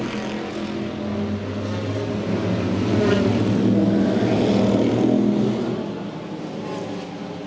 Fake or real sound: real